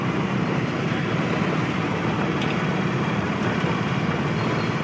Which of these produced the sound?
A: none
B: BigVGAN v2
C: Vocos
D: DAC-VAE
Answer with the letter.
B